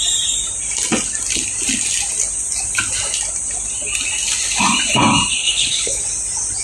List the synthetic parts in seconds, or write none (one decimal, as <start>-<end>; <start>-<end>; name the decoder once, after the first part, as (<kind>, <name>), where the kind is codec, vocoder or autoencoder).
5.4-6.0 (codec, HILCodec)